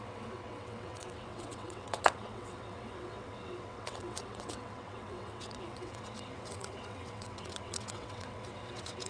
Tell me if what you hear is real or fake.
fake